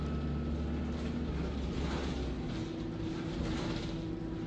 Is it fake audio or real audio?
real